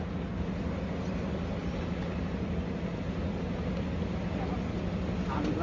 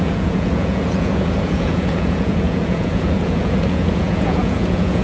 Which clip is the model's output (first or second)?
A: second